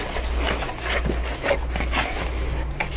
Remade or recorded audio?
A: recorded